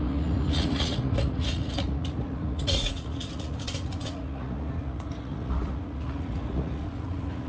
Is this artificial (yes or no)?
yes